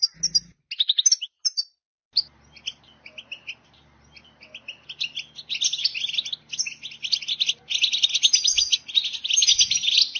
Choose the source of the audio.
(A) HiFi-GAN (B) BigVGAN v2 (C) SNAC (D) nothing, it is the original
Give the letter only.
D